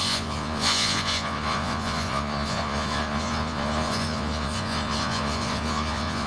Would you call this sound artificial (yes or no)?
yes